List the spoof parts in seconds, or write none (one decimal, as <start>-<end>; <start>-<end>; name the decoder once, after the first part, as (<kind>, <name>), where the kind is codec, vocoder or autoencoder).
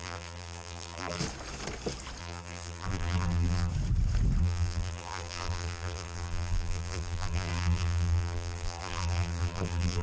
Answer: 0.0-1.2 (vocoder, BigVGAN v2); 2.2-3.7; 4.4-10.0